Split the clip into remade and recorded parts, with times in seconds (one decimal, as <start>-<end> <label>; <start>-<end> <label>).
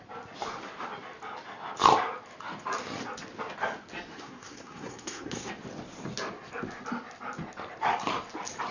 0.0-4.1 recorded; 4.1-5.5 remade; 5.5-8.7 recorded